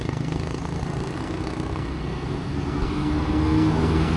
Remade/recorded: remade